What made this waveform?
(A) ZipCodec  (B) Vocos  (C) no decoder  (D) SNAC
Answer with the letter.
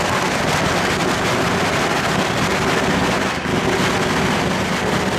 C